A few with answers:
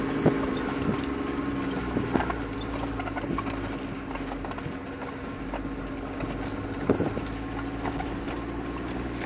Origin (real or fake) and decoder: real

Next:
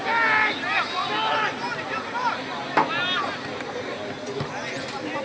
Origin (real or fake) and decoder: real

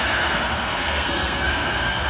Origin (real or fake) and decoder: fake, codec, SNAC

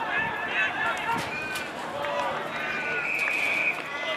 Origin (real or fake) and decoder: real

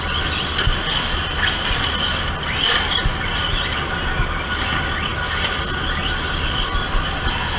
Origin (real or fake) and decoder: real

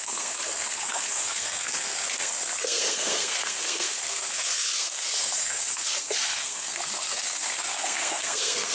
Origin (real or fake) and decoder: fake, codec, SNAC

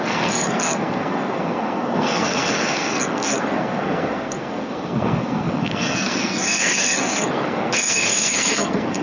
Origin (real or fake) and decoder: fake, codec, SNAC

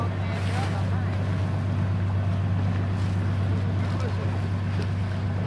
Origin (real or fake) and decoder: real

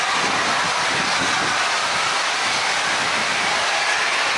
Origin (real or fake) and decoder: real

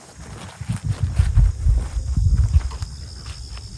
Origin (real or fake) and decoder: real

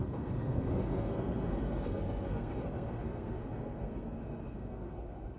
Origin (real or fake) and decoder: fake, codec, SNAC